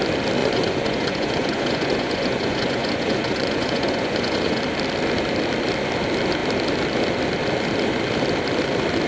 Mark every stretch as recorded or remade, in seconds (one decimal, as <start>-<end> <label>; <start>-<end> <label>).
0.0-0.4 recorded; 0.4-4.6 remade; 4.6-9.1 recorded